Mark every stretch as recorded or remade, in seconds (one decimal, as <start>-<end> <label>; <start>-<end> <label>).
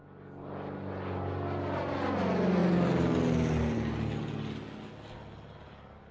0.0-6.1 recorded